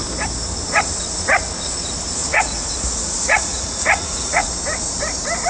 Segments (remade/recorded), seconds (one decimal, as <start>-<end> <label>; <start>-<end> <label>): 0.0-2.2 recorded; 2.2-4.5 remade; 4.5-5.5 recorded